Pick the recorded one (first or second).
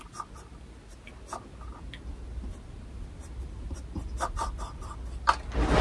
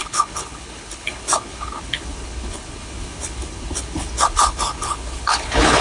first